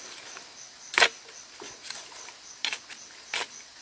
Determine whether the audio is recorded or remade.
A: recorded